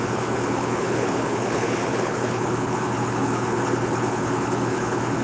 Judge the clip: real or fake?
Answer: fake